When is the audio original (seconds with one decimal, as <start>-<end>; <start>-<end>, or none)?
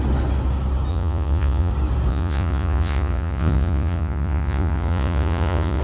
0.0-0.9; 1.7-2.1